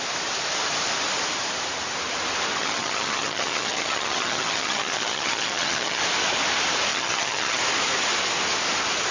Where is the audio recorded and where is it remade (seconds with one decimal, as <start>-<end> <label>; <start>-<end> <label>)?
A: 0.0-2.6 recorded; 2.6-6.0 remade; 6.0-6.9 recorded; 6.9-7.6 remade; 7.6-9.1 recorded